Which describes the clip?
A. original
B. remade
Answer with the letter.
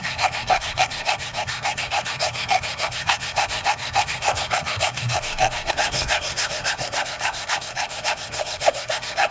B